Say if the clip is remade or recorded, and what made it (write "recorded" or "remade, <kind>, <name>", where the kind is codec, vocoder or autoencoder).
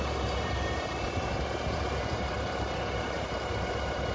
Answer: remade, vocoder, BigVGAN v2